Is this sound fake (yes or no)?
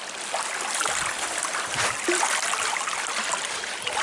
no